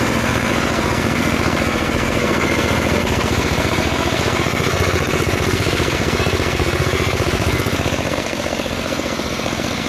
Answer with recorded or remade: remade